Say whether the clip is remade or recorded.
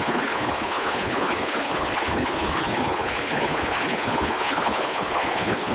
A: remade